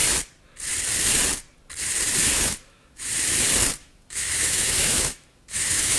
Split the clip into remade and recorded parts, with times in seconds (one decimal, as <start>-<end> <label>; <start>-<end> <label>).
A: 0.0-2.2 recorded; 2.2-3.1 remade; 3.1-3.8 recorded; 3.8-6.0 remade